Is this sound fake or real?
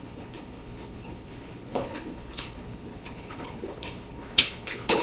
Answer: fake